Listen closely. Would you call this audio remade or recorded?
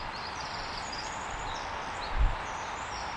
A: remade